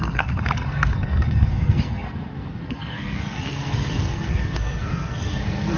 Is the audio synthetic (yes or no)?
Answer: yes